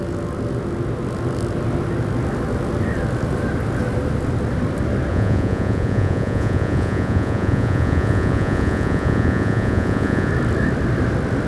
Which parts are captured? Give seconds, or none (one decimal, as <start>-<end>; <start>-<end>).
0.0-5.1; 10.3-11.5